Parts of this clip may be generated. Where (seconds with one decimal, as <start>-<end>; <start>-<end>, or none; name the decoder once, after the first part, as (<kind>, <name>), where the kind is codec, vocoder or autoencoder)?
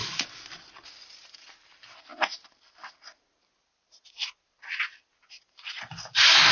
0.0-1.2 (vocoder, BigVGAN v2)